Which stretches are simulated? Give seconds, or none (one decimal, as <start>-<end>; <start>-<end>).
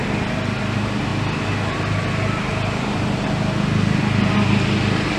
none